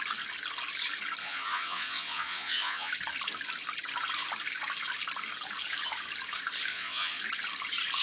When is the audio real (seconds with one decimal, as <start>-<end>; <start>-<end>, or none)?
0.0-1.2; 2.9-6.7; 7.2-8.0